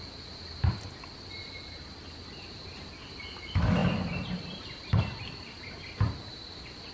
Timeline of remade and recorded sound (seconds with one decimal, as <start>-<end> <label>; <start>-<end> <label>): 0.0-6.9 recorded